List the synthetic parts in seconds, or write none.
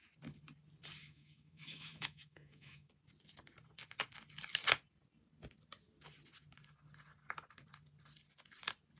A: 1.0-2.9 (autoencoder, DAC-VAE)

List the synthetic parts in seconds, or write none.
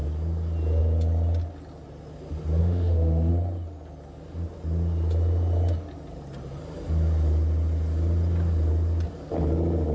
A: 2.6-3.3 (autoencoder, DAC-VAE)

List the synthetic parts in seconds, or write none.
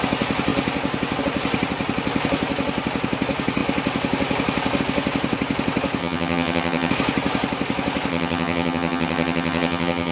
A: 6.0-6.9 (vocoder, HiFi-GAN); 8.1-10.1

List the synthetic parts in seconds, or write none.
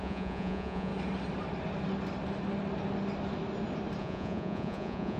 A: 0.0-0.9 (vocoder, Vocos); 4.0-5.2